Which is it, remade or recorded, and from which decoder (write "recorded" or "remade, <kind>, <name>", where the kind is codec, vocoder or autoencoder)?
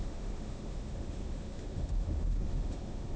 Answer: remade, autoencoder, DAC-VAE